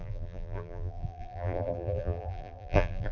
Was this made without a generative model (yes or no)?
no